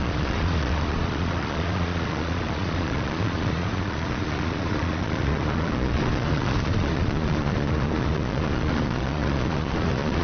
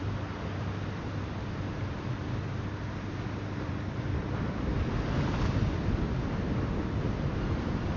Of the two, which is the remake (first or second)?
first